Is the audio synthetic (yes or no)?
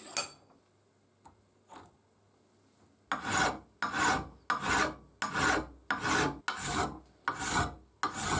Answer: no